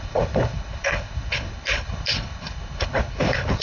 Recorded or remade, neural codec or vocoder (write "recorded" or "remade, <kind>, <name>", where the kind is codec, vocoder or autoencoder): remade, codec, HILCodec